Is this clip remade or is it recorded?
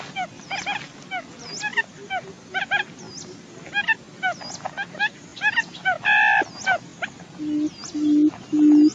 recorded